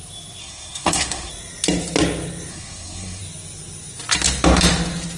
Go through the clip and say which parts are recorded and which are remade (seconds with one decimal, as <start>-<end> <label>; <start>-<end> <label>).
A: 0.0-0.4 recorded; 0.4-1.3 remade; 1.3-2.5 recorded; 2.5-3.2 remade; 3.2-5.2 recorded